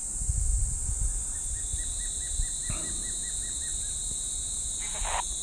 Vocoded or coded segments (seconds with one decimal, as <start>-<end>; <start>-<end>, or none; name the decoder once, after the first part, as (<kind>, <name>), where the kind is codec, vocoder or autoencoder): none